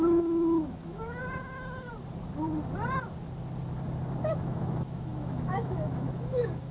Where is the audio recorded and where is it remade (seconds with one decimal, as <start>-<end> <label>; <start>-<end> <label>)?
0.0-1.2 remade; 1.2-4.2 recorded; 4.2-6.7 remade